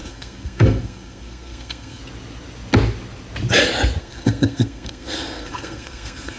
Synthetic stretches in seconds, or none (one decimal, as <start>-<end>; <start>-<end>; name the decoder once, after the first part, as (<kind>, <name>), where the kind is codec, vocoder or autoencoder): 0.0-2.0 (codec, SNAC); 4.0-6.4